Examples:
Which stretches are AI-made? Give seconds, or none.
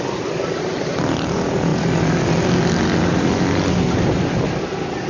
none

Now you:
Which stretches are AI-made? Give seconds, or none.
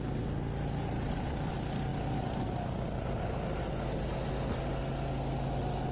none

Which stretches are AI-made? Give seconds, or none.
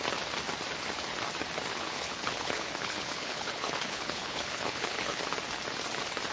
1.7-5.2 (codec, HILCodec)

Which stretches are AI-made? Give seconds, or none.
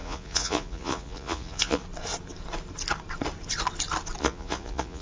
0.0-1.8 (vocoder, Vocos); 4.2-5.0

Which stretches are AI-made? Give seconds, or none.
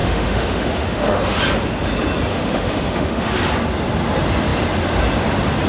0.0-1.4 (autoencoder, DAC-VAE); 2.3-3.3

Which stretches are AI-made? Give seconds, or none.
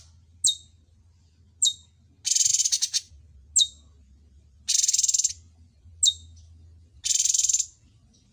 none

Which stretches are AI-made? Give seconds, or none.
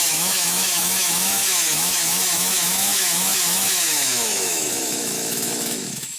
0.0-6.2 (autoencoder, DAC-VAE)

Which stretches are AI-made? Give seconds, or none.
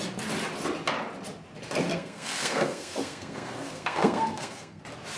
1.9-4.8 (codec, SNAC)